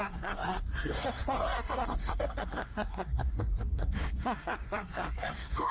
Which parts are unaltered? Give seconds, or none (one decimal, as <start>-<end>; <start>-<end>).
none